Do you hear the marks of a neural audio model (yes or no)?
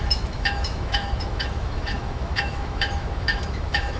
yes